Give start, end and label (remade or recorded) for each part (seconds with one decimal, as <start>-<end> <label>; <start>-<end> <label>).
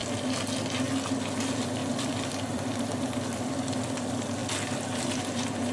0.0-1.4 recorded; 1.4-4.4 remade; 4.4-5.0 recorded; 5.0-5.7 remade